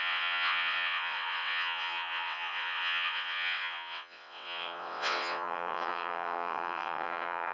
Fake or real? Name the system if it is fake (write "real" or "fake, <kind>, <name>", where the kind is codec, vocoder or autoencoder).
fake, vocoder, WaveNeXt